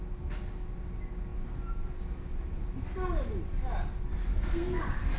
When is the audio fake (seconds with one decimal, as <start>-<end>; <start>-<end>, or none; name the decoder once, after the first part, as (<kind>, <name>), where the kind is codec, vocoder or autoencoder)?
4.3-4.8 (codec, SNAC)